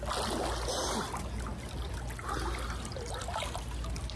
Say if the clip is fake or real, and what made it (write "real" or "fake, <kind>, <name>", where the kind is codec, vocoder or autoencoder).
real